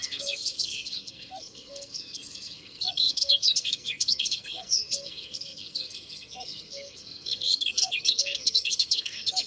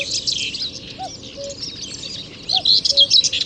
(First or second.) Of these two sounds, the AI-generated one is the first